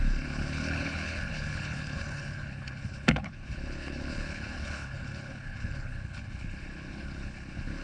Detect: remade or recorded remade